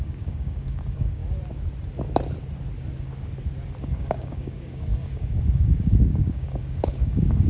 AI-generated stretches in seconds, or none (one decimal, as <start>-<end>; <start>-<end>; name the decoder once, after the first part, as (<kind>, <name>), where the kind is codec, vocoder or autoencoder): 0.0-1.2 (codec, DAC); 3.8-7.5